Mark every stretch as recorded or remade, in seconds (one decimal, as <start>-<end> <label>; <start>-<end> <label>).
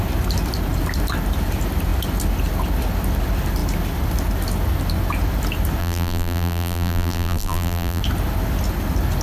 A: 0.0-5.8 recorded; 5.8-8.0 remade; 8.0-9.2 recorded